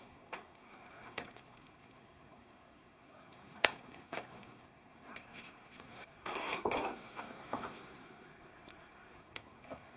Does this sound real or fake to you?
fake